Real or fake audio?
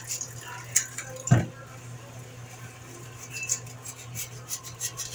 real